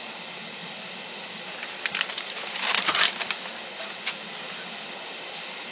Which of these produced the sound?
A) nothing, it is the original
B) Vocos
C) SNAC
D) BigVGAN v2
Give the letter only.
A